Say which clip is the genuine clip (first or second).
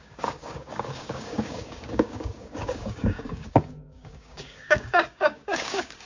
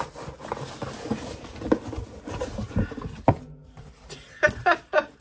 second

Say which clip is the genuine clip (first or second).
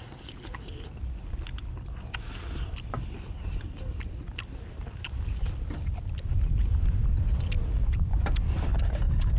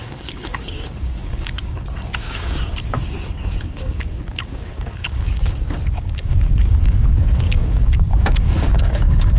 first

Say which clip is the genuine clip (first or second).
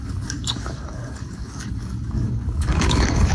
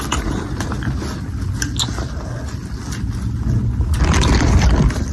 second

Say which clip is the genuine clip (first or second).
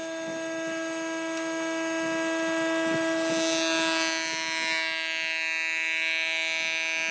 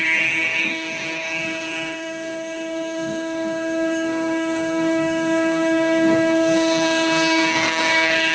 first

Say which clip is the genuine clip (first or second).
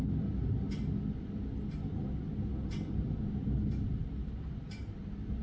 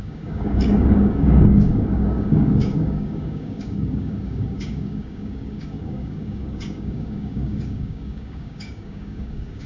first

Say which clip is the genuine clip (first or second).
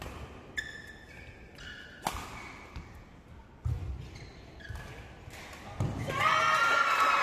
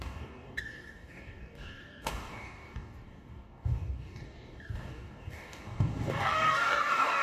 first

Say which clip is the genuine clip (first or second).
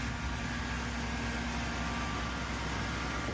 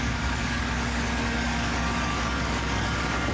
first